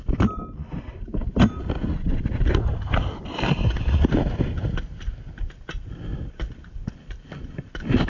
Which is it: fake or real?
real